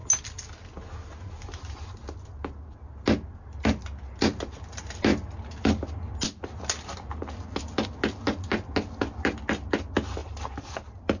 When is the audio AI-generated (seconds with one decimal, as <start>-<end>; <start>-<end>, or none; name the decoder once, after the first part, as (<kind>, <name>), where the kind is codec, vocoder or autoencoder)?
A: 10.2-11.2 (vocoder, BigVGAN v2)